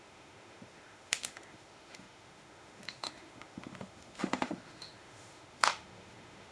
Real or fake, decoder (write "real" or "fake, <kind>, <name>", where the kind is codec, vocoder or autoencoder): fake, autoencoder, DAC-VAE